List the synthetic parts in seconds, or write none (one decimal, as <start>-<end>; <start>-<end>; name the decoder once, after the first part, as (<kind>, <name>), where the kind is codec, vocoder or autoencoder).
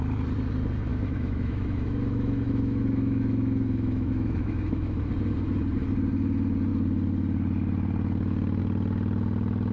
0.9-5.1 (autoencoder, DAC-VAE)